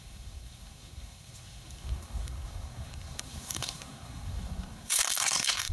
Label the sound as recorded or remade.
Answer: remade